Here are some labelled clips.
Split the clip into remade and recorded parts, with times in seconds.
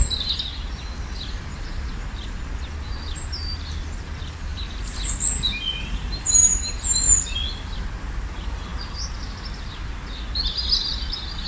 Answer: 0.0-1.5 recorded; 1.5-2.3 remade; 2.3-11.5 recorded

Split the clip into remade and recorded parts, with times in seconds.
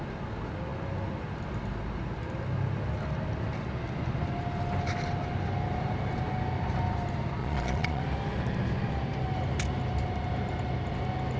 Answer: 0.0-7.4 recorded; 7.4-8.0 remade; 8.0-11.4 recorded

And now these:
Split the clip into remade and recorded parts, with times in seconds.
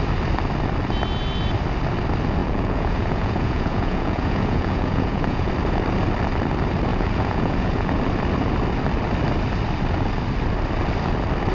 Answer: 0.0-2.4 recorded; 2.4-5.5 remade; 5.5-6.9 recorded; 6.9-8.0 remade; 8.0-11.5 recorded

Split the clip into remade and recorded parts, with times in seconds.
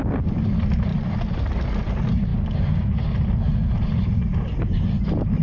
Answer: 0.0-5.4 recorded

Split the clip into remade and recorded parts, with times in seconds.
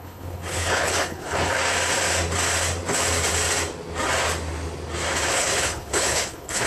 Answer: 0.0-1.6 remade; 1.6-5.3 recorded; 5.3-6.7 remade